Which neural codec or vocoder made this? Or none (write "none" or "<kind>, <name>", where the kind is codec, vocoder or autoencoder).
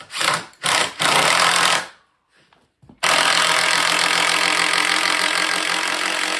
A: vocoder, BigVGAN v2